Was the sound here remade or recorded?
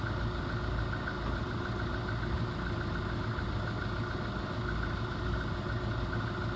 recorded